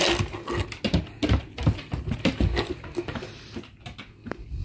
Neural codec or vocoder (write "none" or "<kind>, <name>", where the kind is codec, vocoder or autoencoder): none